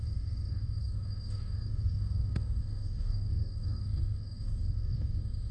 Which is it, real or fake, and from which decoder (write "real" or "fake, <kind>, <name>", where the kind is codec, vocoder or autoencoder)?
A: fake, codec, DAC